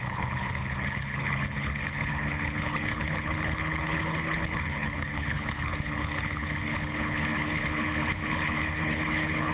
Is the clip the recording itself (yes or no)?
no